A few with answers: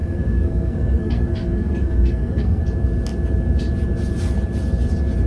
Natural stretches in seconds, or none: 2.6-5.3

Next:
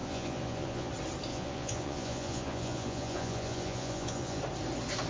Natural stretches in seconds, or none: 0.9-1.3; 4.4-5.1

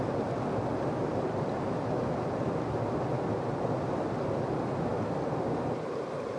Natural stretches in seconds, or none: 0.0-6.4